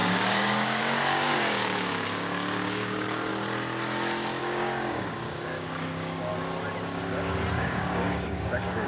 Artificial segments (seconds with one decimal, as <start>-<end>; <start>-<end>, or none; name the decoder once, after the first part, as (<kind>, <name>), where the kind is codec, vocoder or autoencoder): 0.0-3.3 (codec, DAC); 4.4-6.3; 7.6-8.9